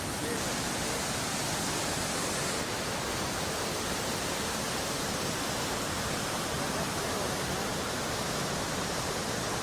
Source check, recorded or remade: recorded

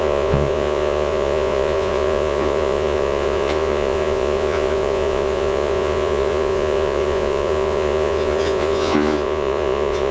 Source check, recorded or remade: remade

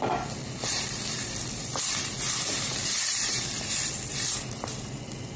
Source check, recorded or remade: recorded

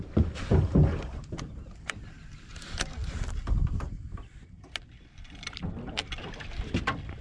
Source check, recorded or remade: recorded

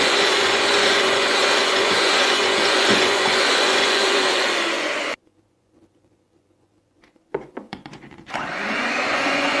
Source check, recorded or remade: remade